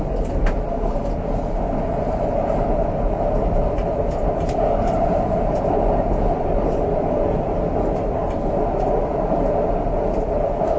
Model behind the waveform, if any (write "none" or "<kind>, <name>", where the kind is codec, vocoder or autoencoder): none